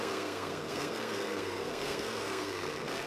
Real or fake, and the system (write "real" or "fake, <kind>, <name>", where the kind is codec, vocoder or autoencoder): fake, codec, SNAC